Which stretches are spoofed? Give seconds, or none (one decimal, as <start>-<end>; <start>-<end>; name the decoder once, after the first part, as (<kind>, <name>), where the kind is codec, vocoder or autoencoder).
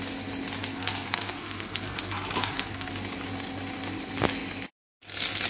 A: 0.7-2.9 (codec, SNAC)